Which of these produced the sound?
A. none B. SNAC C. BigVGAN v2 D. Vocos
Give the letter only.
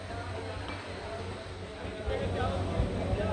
A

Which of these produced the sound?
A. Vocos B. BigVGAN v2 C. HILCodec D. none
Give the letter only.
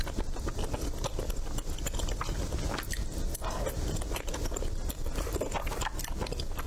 D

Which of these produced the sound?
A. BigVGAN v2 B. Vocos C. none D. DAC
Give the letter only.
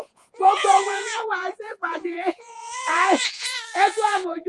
B